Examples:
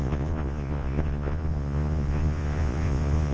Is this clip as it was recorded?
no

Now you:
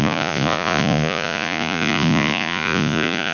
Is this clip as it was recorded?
no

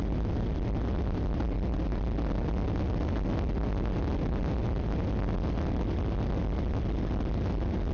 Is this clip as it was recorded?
yes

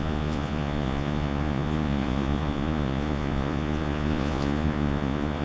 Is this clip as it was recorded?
no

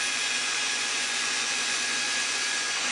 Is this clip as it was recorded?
no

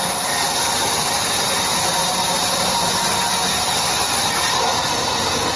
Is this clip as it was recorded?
yes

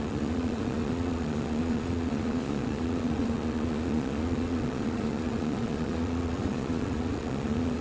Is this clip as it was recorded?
no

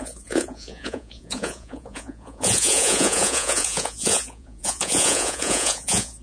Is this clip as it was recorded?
no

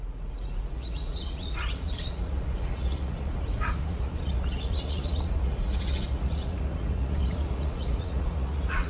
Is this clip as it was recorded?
no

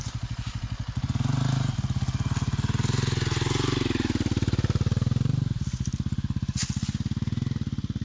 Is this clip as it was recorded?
yes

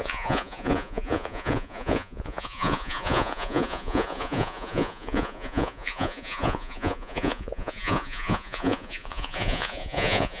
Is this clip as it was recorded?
no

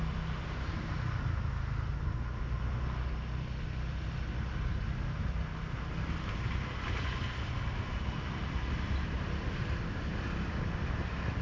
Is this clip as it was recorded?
yes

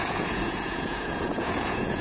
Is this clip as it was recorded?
no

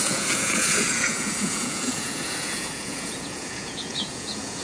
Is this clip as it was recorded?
no